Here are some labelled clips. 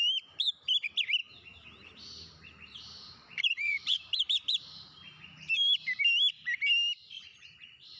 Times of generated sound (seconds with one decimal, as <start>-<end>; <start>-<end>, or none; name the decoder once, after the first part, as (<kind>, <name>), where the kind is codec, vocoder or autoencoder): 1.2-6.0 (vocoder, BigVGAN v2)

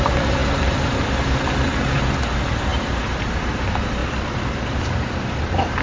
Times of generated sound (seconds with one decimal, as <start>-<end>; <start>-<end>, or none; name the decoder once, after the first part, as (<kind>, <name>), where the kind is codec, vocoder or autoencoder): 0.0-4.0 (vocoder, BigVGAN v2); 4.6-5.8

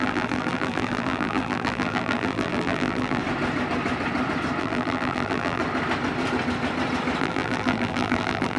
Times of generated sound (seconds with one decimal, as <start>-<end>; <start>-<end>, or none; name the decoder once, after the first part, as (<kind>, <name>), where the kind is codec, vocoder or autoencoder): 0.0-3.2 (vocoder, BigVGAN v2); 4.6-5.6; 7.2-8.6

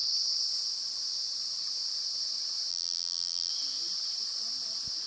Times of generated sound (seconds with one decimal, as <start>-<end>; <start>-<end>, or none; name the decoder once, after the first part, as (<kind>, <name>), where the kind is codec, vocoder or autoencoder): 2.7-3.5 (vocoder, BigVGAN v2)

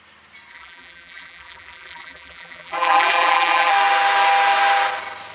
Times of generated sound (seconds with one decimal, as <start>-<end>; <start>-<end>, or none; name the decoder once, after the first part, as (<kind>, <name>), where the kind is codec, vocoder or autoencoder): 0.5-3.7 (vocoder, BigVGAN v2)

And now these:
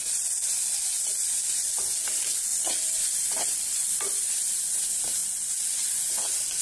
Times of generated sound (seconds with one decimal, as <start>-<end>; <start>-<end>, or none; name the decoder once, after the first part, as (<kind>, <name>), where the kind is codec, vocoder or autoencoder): 2.5-4.2 (vocoder, BigVGAN v2)

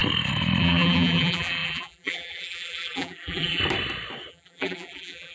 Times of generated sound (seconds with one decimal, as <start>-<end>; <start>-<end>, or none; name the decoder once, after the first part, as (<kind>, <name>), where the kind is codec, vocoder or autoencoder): 0.6-3.6 (vocoder, BigVGAN v2); 4.3-5.3

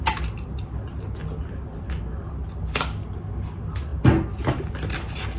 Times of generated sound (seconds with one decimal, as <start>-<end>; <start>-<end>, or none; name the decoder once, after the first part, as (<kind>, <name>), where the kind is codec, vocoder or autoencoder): 1.2-1.9 (vocoder, BigVGAN v2)